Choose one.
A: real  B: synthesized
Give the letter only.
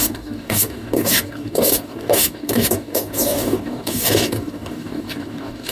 B